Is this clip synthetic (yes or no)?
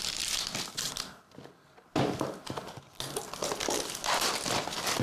no